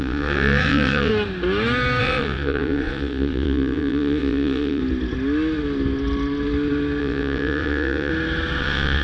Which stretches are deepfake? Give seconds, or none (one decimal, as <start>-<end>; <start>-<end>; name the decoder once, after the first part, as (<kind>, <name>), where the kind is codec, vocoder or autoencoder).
0.0-1.1 (vocoder, WaveNeXt); 2.0-4.8; 7.0-8.1; 8.6-9.0